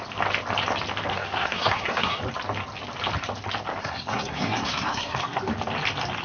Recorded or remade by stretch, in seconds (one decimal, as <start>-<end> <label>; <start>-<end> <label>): 0.0-1.1 recorded; 1.1-2.2 remade; 2.2-3.8 recorded; 3.8-5.4 remade; 5.4-6.2 recorded